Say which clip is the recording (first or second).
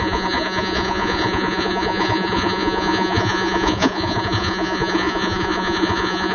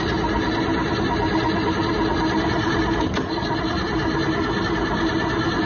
second